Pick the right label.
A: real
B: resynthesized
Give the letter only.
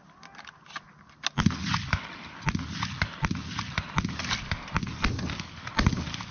A